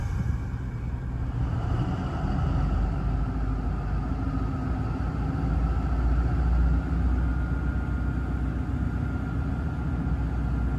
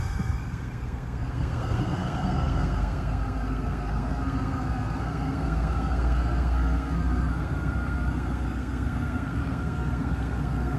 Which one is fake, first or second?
second